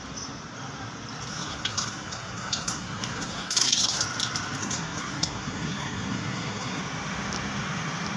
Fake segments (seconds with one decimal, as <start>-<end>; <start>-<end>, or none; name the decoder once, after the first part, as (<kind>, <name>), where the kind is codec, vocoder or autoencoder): 1.3-4.0 (codec, SNAC); 4.6-6.8